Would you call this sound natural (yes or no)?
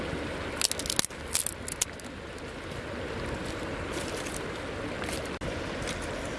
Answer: yes